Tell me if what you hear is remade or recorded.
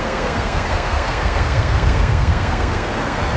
remade